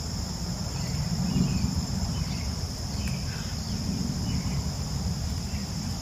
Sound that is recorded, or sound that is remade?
recorded